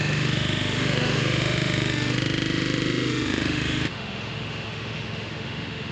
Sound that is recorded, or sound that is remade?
remade